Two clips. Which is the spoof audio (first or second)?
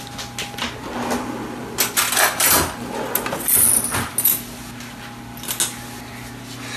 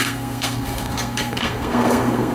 second